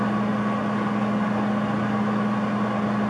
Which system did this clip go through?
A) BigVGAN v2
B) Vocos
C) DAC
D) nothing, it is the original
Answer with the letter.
D